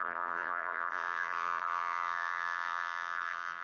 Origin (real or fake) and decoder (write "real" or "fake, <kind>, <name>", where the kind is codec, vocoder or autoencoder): fake, vocoder, BigVGAN v2